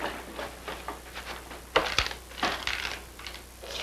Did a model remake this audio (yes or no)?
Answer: no